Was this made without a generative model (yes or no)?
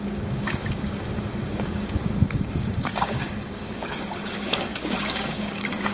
no